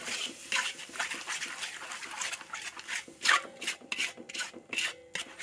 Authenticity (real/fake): real